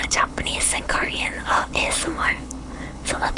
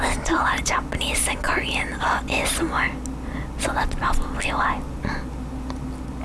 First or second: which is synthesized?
first